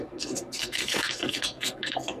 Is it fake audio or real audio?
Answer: fake